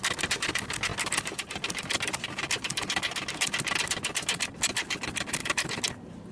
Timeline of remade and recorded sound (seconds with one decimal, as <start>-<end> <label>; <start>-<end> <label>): 0.0-6.3 recorded